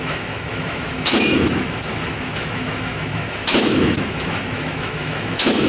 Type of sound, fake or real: fake